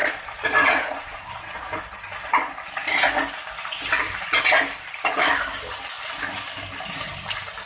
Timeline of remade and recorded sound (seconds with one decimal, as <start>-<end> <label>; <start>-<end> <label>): 0.0-1.6 remade; 1.6-7.7 recorded